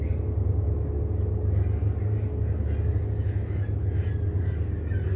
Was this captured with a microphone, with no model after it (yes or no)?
yes